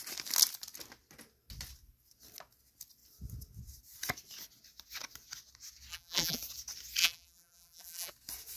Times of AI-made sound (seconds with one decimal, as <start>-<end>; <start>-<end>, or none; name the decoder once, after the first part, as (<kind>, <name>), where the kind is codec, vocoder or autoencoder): 5.9-6.4 (vocoder, BigVGAN v2); 7.0-8.1